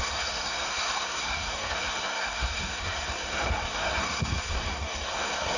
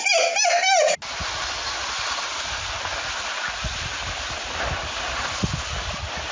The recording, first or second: second